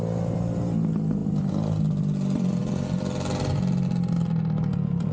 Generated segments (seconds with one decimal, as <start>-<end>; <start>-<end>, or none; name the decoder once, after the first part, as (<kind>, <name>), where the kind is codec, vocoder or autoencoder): none

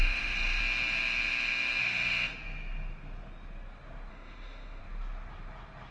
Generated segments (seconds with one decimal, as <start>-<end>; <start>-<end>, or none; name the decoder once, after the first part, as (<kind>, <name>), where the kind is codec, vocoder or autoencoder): 0.0-0.6 (autoencoder, DAC-VAE); 1.8-2.3; 4.1-4.8